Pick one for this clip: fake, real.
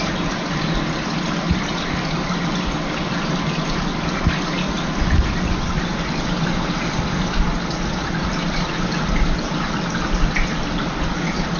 real